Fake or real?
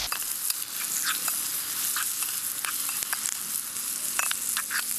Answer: real